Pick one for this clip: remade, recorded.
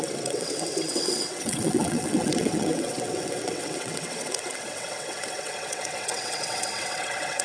remade